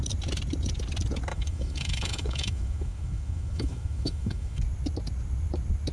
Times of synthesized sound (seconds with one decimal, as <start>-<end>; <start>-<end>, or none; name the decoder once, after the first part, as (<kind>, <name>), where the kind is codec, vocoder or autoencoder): 1.3-4.6 (autoencoder, DAC-VAE)